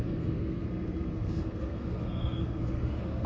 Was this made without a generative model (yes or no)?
no